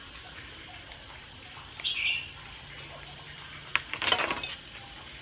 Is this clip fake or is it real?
real